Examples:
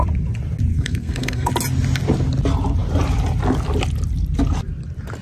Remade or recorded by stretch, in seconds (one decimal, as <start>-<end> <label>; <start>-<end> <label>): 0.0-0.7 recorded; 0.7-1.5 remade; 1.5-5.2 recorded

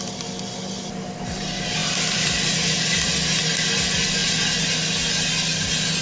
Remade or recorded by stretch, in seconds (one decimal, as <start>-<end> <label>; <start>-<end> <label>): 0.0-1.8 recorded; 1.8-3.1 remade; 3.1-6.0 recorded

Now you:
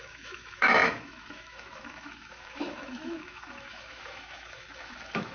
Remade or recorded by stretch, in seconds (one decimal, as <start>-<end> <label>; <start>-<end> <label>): 0.0-5.3 remade

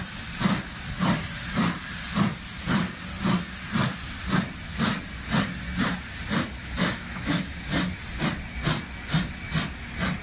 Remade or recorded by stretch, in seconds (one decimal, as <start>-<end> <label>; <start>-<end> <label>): 0.0-6.6 recorded; 6.6-7.4 remade; 7.4-10.2 recorded

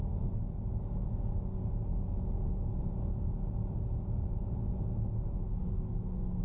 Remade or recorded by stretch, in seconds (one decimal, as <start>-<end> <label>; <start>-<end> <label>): 0.0-6.4 recorded